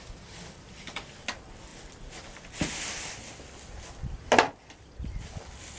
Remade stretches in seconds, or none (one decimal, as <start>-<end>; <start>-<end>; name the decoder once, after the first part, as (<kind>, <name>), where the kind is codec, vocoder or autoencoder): none